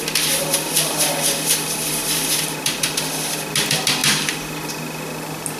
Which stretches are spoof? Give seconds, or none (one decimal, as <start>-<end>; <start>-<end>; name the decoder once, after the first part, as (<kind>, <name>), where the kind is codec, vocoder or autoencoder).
none